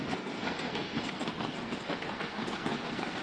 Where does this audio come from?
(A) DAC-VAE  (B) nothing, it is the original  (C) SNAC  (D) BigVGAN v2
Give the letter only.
C